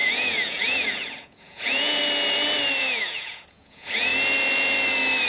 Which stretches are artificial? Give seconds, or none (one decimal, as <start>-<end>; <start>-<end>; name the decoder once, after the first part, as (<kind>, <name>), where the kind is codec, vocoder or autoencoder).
0.0-2.0 (vocoder, Vocos); 2.8-4.1